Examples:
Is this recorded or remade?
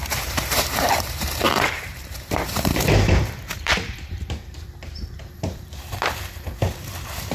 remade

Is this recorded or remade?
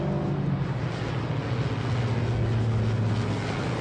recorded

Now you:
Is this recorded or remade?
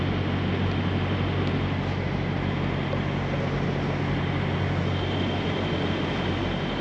recorded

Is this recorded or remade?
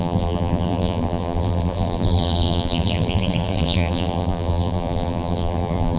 remade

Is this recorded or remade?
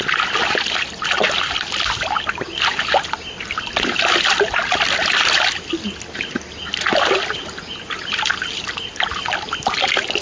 recorded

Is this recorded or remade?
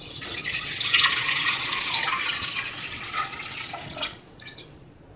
remade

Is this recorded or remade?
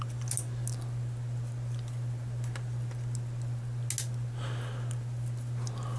recorded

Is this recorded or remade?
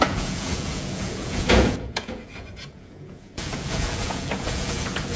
remade